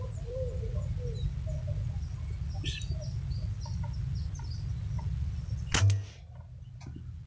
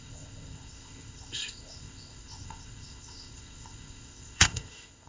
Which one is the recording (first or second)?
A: first